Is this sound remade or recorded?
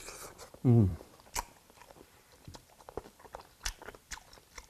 remade